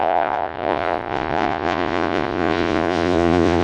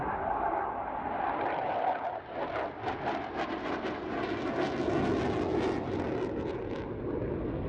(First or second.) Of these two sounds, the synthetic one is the first